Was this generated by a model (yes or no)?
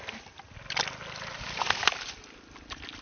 no